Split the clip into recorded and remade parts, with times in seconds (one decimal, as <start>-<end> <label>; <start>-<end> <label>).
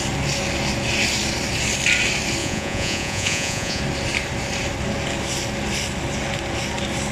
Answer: 0.0-2.4 recorded; 2.4-3.8 remade; 3.8-7.1 recorded